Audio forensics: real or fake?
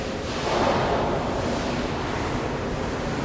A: real